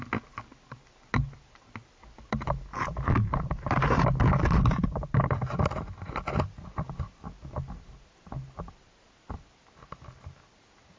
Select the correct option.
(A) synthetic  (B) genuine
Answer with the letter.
B